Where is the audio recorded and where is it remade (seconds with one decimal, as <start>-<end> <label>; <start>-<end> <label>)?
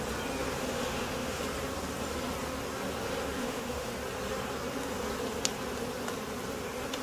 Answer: 0.0-0.6 recorded; 0.6-1.4 remade; 1.4-3.4 recorded; 3.4-3.9 remade; 3.9-7.0 recorded